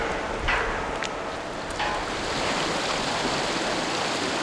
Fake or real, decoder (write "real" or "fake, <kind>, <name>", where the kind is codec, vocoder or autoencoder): real